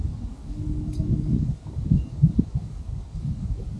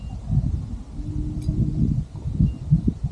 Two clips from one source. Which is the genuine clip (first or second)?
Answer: second